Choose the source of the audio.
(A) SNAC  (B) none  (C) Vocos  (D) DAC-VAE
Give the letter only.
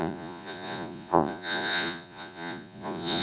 C